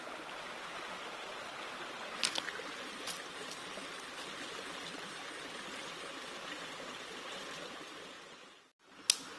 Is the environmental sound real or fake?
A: real